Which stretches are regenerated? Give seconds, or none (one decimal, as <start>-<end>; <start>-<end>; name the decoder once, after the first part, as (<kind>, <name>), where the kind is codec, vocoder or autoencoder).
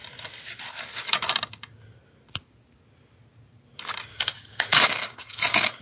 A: 4.1-5.8 (codec, DAC)